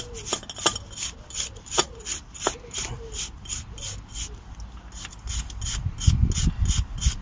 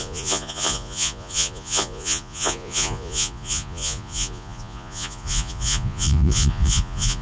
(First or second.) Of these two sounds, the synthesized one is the second